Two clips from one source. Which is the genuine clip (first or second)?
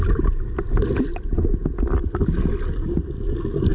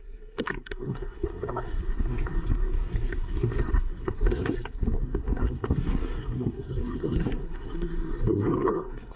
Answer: first